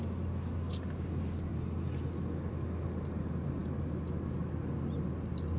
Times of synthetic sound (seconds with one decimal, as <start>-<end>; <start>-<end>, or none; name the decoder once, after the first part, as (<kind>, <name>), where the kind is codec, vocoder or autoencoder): none